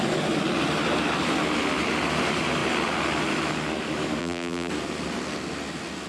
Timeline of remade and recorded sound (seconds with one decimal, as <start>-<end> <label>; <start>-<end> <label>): 0.0-4.2 recorded; 4.2-4.7 remade; 4.7-6.1 recorded